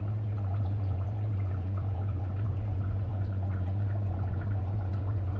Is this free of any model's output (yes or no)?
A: no